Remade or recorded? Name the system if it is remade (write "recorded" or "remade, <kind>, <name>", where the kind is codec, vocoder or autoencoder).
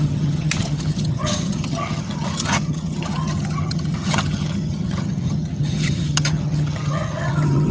remade, vocoder, HiFi-GAN